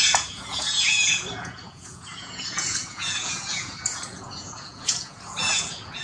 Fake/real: fake